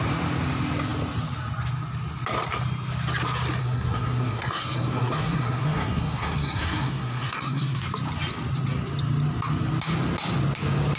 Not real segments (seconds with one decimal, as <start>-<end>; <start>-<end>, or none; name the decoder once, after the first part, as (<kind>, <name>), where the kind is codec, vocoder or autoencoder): 3.6-7.8 (codec, SNAC)